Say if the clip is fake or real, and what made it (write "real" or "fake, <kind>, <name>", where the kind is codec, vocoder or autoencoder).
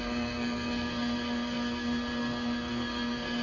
fake, codec, SNAC